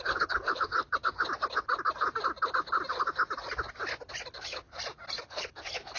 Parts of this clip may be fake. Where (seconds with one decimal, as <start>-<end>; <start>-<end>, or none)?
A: 0.0-0.7; 4.3-4.7; 5.2-6.0